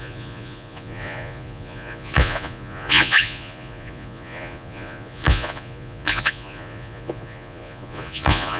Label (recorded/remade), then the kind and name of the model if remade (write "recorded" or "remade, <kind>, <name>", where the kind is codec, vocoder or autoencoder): remade, vocoder, Vocos